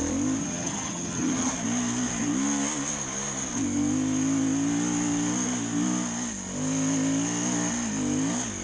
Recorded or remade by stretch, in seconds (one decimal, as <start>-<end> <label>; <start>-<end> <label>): 0.0-0.4 recorded; 0.4-1.5 remade; 1.5-8.6 recorded